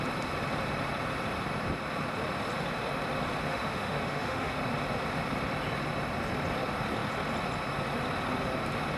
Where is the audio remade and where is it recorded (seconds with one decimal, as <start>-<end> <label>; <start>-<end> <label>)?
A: 0.0-3.5 recorded; 3.5-4.6 remade; 4.6-9.0 recorded